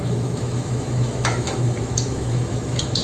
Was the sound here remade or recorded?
remade